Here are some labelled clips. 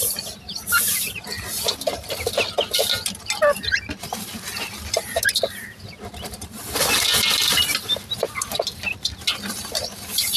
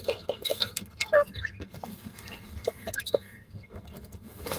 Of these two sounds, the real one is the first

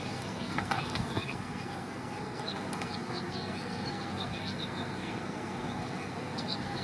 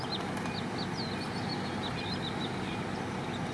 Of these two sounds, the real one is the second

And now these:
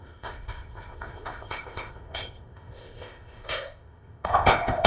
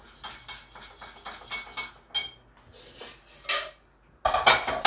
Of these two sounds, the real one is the second